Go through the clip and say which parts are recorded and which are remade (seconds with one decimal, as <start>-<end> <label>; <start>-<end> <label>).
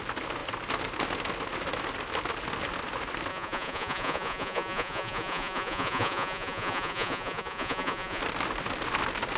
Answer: 0.0-3.3 recorded; 3.3-8.2 remade; 8.2-9.4 recorded